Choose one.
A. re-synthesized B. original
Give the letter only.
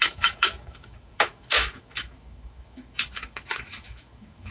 A